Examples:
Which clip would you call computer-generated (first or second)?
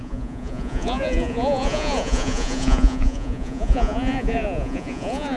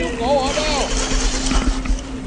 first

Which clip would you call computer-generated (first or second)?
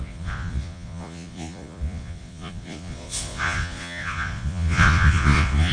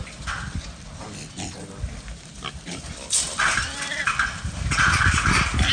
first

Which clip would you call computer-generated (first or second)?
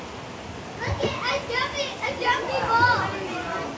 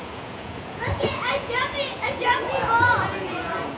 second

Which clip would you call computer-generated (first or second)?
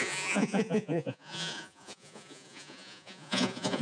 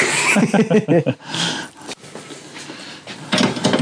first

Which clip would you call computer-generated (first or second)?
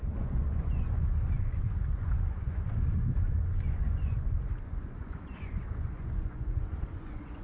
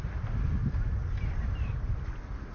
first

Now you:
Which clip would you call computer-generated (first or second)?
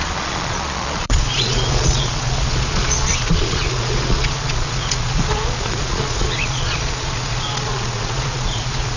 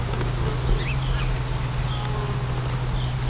first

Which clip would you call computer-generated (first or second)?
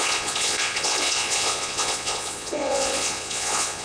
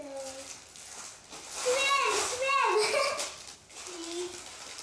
first